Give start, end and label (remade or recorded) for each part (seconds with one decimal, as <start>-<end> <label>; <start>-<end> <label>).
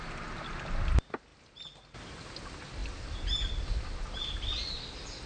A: 0.0-5.3 recorded